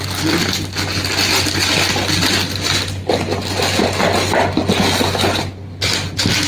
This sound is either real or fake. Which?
real